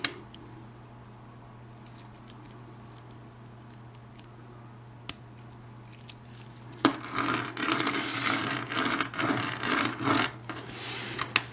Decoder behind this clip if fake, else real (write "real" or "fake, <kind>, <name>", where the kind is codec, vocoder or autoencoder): real